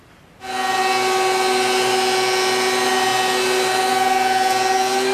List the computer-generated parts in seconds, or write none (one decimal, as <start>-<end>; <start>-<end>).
none